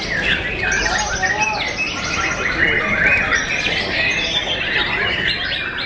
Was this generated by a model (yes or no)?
no